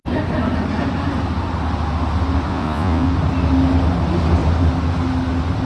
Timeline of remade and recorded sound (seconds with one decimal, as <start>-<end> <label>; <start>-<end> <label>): 0.0-2.5 recorded; 2.5-3.1 remade; 3.1-5.6 recorded

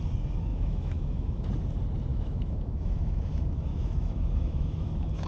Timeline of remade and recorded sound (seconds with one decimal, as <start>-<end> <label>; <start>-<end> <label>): 0.0-0.5 recorded; 0.5-1.5 remade; 1.5-2.1 recorded; 2.1-5.3 remade

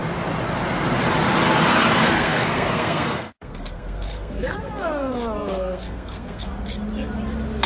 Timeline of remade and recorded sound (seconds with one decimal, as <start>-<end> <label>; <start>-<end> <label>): 0.0-2.0 recorded; 2.0-6.5 remade; 6.5-7.7 recorded

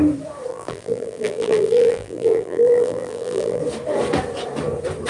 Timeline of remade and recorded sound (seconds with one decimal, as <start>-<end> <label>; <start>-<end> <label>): 0.0-0.5 recorded; 0.5-3.6 remade; 3.6-5.1 recorded

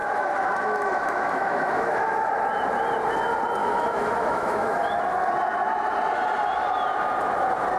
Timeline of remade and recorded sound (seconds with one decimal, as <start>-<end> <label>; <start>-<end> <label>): 0.0-2.3 remade; 2.3-3.6 recorded; 3.6-5.0 remade; 5.0-7.8 recorded

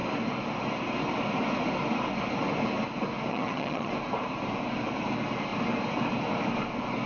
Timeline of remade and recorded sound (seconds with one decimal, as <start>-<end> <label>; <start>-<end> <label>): 0.0-3.3 recorded; 3.3-3.9 remade; 3.9-7.1 recorded